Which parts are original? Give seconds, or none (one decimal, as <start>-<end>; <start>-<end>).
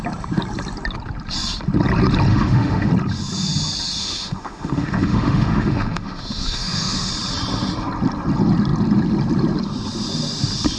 0.0-2.3; 2.9-4.0; 7.1-10.8